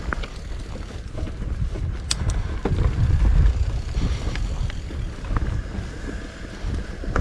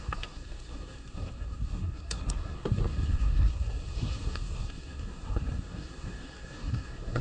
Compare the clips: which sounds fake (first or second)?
second